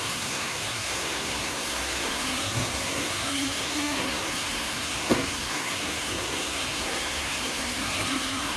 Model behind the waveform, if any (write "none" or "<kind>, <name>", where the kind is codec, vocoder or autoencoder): codec, SNAC